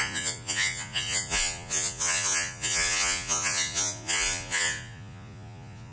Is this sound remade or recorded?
remade